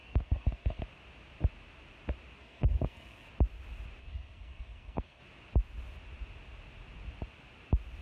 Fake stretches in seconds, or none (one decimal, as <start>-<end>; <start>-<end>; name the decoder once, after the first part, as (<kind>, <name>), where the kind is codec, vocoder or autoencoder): 0.0-0.8 (codec, SNAC); 2.4-3.3; 4.0-5.2